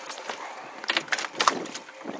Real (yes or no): yes